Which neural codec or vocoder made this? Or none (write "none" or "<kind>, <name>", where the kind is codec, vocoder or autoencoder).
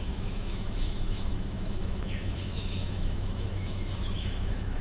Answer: autoencoder, DAC-VAE